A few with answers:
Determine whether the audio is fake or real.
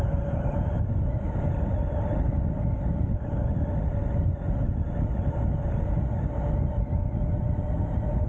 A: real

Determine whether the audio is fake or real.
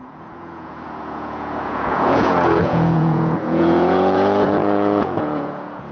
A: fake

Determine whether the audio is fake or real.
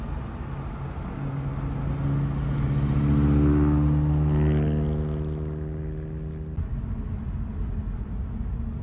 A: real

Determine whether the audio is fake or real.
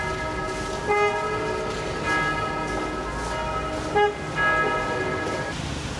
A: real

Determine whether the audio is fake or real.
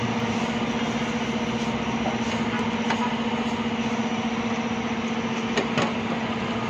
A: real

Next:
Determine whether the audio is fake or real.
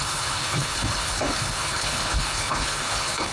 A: fake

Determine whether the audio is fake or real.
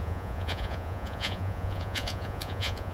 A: fake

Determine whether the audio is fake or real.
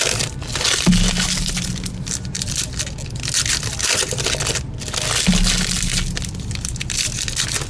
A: real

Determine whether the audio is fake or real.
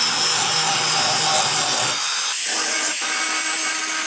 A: real